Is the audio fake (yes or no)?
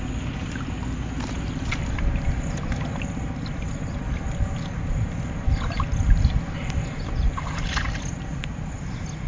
no